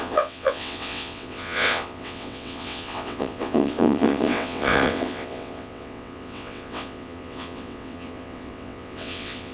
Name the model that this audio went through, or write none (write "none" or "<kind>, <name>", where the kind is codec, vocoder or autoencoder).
vocoder, WaveNeXt